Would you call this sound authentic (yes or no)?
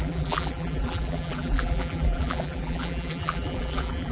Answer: no